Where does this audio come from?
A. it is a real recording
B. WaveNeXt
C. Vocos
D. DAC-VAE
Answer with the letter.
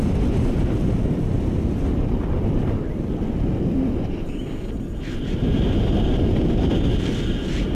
A